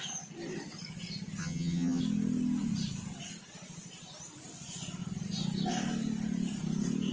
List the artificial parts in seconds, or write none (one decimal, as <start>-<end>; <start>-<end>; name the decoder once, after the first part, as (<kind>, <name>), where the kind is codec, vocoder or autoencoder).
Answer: 1.4-2.0 (vocoder, HiFi-GAN)